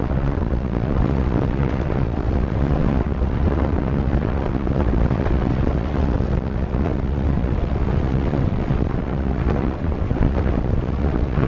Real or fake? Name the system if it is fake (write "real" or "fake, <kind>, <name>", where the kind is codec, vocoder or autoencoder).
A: fake, vocoder, WaveNeXt